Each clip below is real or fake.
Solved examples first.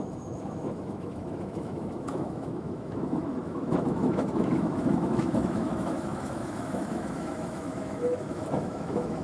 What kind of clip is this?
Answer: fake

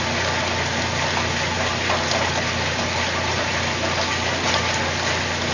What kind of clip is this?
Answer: real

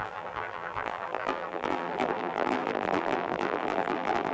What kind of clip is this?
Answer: fake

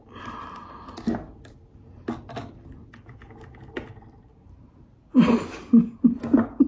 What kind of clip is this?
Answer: real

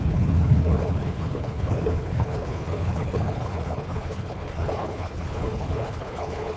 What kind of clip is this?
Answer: fake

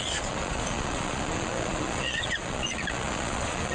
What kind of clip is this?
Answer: fake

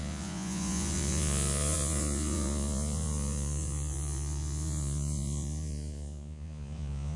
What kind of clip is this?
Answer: fake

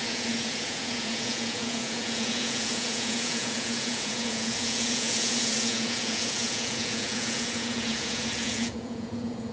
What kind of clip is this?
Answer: fake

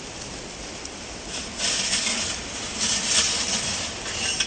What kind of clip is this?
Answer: real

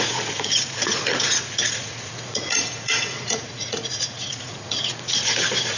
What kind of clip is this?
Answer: fake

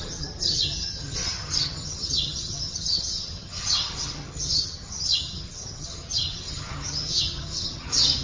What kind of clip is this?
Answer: fake